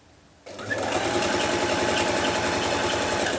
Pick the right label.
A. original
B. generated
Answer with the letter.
A